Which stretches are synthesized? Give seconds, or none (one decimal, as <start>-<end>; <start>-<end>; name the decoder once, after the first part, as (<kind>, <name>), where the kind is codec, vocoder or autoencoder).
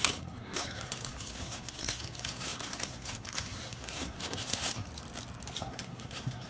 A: 0.0-4.9 (codec, SNAC); 5.6-6.5